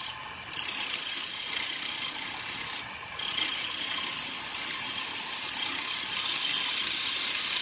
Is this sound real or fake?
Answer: real